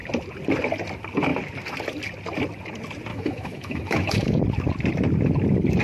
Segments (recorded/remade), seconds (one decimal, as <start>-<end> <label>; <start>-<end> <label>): 0.0-3.1 recorded; 3.1-4.4 remade; 4.4-5.8 recorded